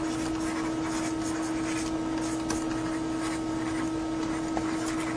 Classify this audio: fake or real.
real